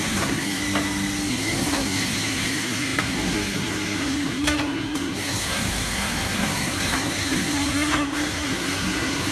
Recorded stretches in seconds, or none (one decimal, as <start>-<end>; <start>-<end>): 0.6-1.3